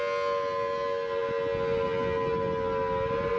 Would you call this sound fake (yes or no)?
no